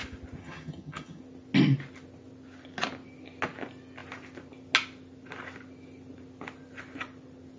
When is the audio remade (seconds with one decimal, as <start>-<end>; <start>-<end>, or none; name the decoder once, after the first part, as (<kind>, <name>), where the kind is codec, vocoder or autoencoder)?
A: 0.4-1.2 (vocoder, HiFi-GAN)